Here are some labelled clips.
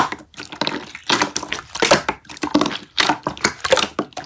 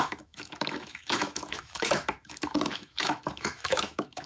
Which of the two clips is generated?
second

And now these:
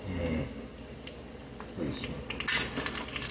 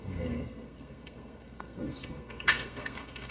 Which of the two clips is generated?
second